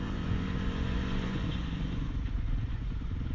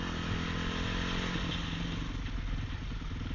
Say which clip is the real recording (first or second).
second